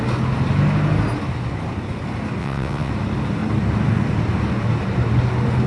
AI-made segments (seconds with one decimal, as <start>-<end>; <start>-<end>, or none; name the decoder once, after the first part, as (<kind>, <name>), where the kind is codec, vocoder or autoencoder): 2.4-2.9 (vocoder, WaveNeXt)